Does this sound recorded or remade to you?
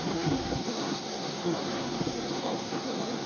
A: remade